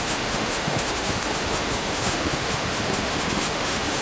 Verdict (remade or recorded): remade